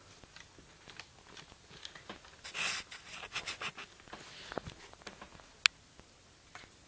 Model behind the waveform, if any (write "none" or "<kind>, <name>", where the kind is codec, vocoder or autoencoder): none